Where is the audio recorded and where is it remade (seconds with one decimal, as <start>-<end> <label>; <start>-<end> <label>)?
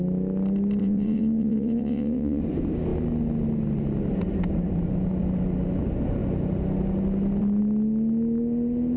0.0-0.8 recorded; 0.8-2.4 remade; 2.4-9.0 recorded